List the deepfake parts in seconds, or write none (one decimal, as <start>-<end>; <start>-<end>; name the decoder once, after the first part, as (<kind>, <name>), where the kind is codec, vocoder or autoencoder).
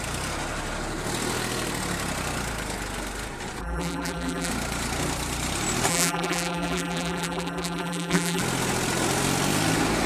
3.6-4.5 (vocoder, BigVGAN v2); 5.9-8.4